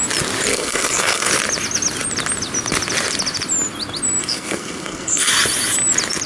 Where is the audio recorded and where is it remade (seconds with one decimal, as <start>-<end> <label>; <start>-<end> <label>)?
0.0-0.5 recorded; 0.5-1.3 remade; 1.3-4.2 recorded; 4.2-5.3 remade; 5.3-6.3 recorded